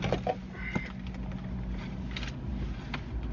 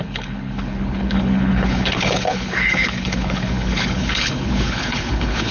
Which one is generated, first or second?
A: second